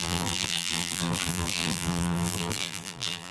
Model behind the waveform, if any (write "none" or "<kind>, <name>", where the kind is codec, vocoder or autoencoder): vocoder, BigVGAN v2